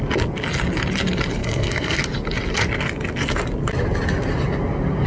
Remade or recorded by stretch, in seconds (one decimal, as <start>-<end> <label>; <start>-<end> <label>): 0.0-1.4 recorded; 1.4-2.0 remade; 2.0-5.1 recorded